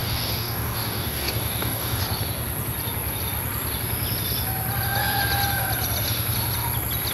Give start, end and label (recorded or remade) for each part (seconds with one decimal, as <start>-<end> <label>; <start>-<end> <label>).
0.0-2.0 remade; 2.0-7.1 recorded